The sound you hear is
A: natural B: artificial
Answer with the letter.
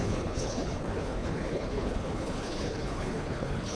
B